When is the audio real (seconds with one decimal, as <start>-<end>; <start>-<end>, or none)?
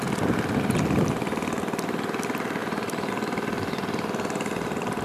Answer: 0.0-2.6; 3.1-5.0